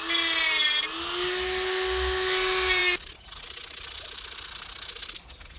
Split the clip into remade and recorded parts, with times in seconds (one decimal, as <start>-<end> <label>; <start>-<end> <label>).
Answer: 0.0-5.6 recorded